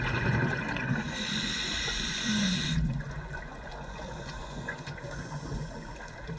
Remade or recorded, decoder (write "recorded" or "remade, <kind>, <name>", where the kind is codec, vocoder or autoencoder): remade, vocoder, Vocos